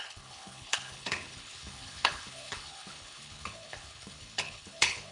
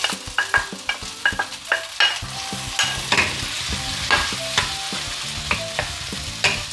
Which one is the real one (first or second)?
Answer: second